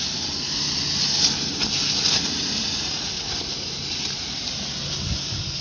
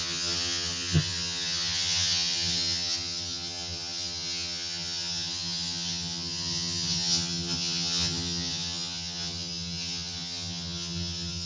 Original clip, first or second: first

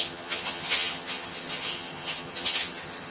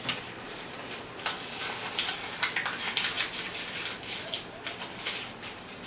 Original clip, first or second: second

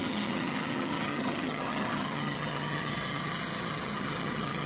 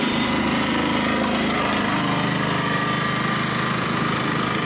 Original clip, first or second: second